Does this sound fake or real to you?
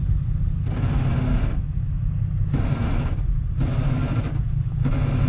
real